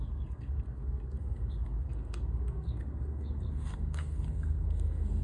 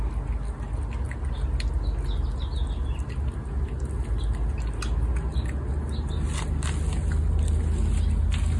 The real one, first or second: second